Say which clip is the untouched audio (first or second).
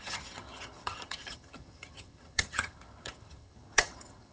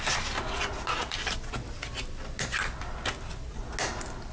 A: second